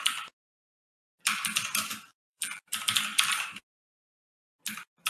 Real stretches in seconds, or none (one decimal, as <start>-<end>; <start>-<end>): 0.0-2.1; 2.7-5.1